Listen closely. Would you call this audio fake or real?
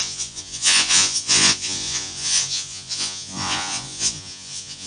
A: fake